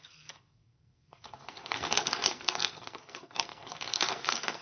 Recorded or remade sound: remade